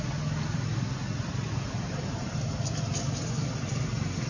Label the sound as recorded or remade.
recorded